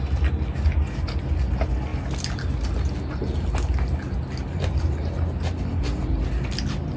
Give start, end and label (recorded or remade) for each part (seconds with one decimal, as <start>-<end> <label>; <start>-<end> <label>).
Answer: 0.0-7.0 recorded